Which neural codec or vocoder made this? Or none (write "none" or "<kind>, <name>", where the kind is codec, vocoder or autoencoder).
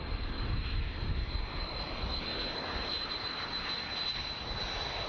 none